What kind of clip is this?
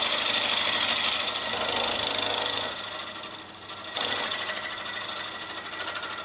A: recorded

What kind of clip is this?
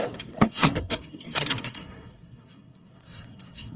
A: remade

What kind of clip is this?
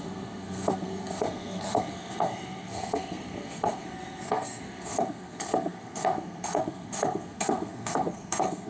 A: remade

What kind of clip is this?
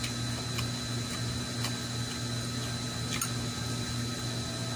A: recorded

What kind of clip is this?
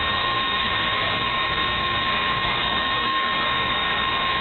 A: remade